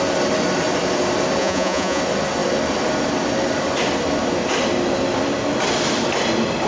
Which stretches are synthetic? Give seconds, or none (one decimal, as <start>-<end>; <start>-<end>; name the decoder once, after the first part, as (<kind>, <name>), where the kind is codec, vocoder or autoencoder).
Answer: 1.4-2.0 (vocoder, Vocos)